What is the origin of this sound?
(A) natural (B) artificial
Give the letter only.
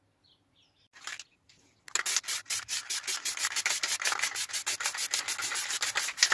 A